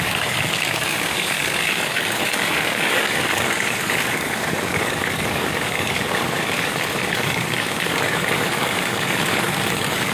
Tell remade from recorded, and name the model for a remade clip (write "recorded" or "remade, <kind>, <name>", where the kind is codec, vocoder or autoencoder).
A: remade, codec, DAC